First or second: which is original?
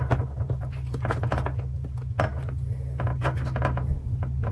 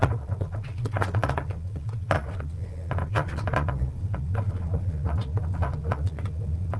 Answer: first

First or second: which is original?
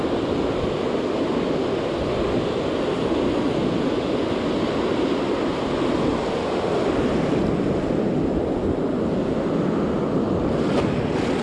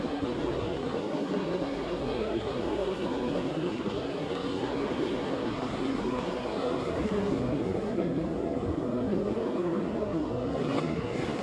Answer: first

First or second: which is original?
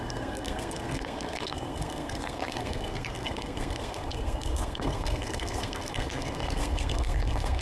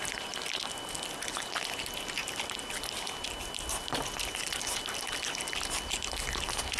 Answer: second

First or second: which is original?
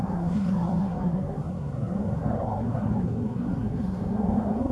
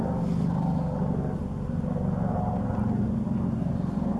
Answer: second